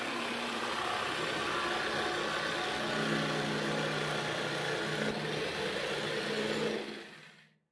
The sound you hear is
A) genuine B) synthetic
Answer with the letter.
A